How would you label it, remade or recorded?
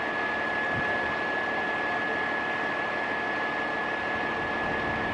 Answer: recorded